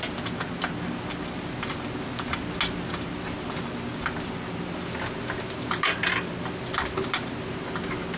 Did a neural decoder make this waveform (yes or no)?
no